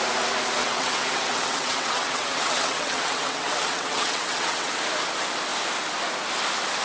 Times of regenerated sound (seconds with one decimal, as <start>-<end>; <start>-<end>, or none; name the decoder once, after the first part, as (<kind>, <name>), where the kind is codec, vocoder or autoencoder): 0.6-4.7 (vocoder, WaveNeXt)